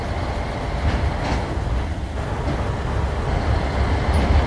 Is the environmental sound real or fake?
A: real